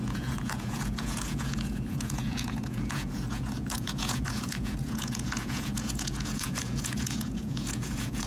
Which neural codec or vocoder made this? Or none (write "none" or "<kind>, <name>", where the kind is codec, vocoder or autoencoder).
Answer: vocoder, Vocos